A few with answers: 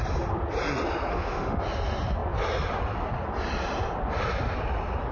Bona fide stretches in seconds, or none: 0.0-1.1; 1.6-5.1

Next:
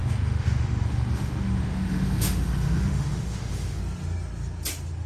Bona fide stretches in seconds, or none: 3.8-5.1

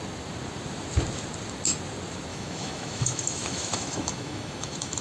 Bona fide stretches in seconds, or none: 0.0-2.3

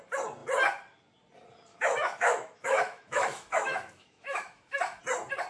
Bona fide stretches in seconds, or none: 0.0-1.7; 5.0-5.5

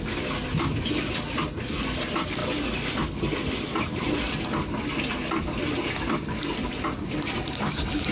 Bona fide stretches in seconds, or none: 0.0-8.1

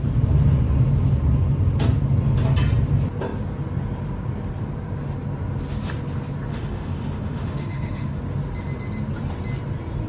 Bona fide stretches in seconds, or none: 0.0-6.5; 8.2-10.1

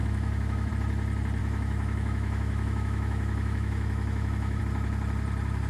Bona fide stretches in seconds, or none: 0.7-1.4; 4.6-5.7

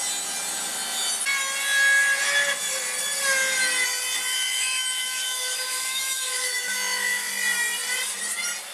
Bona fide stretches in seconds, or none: 0.0-4.3; 7.3-8.7